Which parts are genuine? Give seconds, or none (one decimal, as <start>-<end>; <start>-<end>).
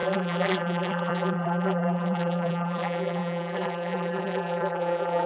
none